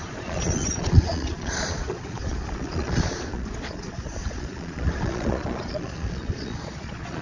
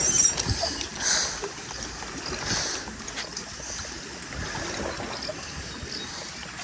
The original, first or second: second